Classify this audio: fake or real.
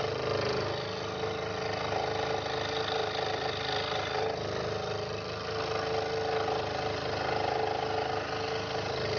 real